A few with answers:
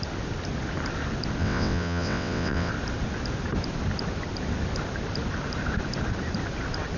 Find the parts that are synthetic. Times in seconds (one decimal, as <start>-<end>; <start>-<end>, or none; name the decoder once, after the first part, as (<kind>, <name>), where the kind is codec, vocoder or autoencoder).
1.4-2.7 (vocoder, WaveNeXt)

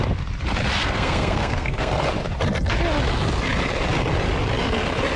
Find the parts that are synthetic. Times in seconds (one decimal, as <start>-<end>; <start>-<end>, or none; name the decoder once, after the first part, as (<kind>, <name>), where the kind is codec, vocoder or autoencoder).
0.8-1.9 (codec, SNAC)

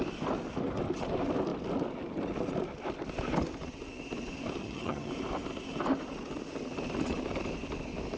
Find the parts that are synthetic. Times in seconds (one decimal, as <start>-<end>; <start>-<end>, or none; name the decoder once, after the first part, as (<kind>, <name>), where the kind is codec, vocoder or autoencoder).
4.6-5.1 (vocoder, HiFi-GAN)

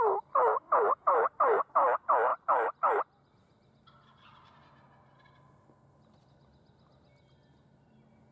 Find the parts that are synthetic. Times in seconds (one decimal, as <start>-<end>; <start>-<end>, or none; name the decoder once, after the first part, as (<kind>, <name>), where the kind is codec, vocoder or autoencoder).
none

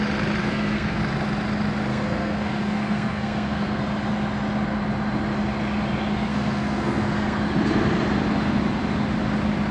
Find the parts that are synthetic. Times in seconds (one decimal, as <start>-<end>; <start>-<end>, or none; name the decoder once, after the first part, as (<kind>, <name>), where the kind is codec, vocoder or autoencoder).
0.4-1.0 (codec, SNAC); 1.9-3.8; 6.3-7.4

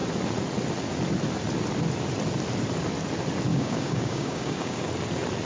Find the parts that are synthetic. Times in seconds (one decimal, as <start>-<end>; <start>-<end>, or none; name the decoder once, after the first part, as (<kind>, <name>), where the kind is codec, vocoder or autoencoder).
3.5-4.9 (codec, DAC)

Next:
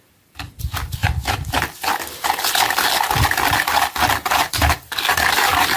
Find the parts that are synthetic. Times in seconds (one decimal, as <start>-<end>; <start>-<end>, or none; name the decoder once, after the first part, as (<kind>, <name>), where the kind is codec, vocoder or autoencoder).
0.0-5.8 (vocoder, BigVGAN v2)